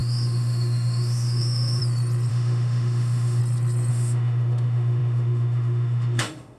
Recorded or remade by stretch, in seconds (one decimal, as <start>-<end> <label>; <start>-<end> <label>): 0.0-1.8 remade; 1.8-2.3 recorded; 2.3-3.4 remade; 3.4-3.9 recorded; 3.9-6.6 remade